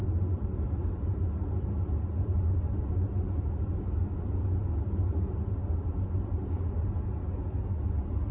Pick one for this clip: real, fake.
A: real